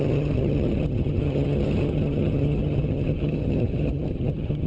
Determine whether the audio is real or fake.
fake